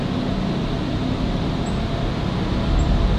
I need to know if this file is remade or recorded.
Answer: recorded